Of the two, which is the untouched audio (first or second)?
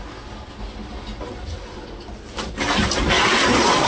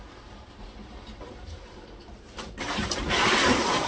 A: first